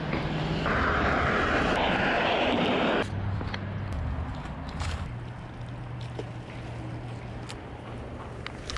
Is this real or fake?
real